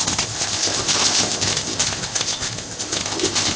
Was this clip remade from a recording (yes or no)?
yes